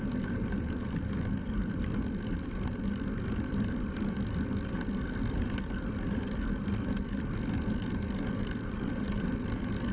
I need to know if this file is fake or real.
real